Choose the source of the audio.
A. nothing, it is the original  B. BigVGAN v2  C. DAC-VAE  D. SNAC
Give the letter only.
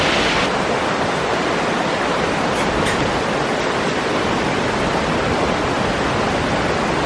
A